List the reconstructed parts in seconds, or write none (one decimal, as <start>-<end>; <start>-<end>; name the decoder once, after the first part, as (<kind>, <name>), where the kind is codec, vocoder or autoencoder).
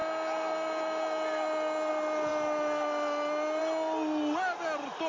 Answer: none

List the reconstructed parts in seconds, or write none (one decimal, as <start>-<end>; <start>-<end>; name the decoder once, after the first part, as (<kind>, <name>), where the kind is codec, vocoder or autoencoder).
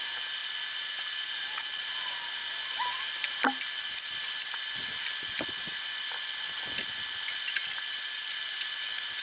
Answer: none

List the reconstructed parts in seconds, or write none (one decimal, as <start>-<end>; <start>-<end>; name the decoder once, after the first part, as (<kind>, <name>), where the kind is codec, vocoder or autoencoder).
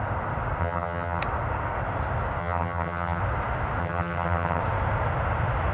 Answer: 0.6-1.2 (vocoder, HiFi-GAN); 2.4-3.2; 3.8-4.6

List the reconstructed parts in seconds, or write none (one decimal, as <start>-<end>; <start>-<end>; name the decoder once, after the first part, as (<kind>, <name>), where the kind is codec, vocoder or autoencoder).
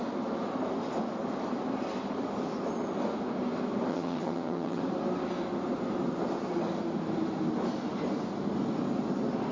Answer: 3.9-4.8 (vocoder, HiFi-GAN)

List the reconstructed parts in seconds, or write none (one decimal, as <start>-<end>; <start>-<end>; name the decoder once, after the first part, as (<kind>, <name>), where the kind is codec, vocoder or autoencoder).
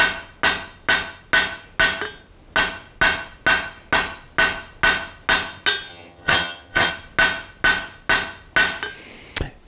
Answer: 5.9-6.9 (vocoder, HiFi-GAN)